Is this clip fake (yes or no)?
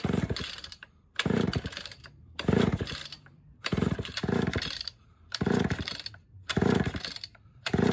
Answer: yes